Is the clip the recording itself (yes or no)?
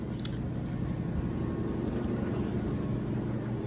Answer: yes